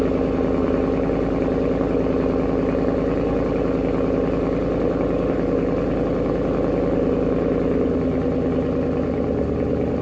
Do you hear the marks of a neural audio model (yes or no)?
no